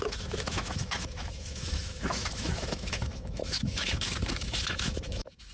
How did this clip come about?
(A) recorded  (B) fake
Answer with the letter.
B